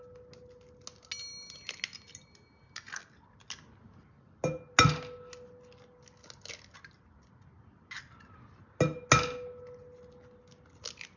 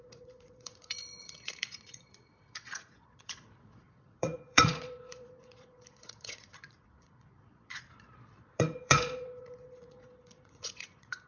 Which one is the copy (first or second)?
second